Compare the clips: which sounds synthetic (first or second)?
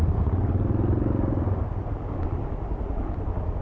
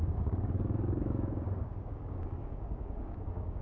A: second